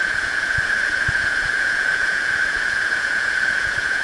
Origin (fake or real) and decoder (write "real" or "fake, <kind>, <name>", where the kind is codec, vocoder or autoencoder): fake, vocoder, Vocos